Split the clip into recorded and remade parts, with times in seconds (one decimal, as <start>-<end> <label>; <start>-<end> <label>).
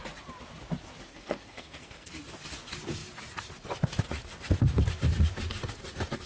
0.0-1.1 recorded; 1.1-2.1 remade; 2.1-6.3 recorded